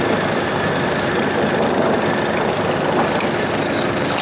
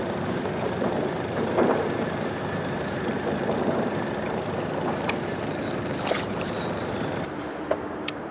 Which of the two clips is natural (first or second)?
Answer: first